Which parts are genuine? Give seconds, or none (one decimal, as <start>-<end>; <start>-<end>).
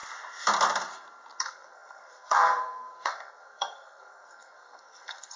0.0-1.4